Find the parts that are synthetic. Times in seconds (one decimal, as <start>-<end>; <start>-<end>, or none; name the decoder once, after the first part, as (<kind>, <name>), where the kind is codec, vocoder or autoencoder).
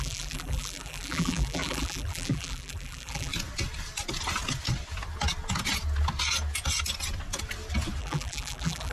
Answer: 0.0-3.3 (vocoder, BigVGAN v2); 8.0-8.9